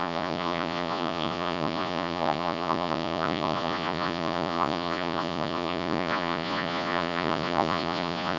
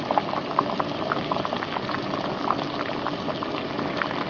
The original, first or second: second